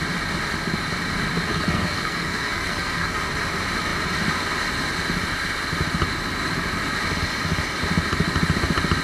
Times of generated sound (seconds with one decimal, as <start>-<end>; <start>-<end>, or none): 1.5-3.3